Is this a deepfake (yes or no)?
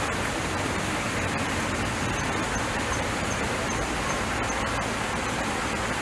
yes